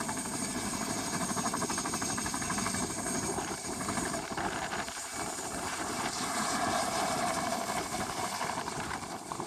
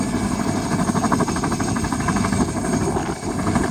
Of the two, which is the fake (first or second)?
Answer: first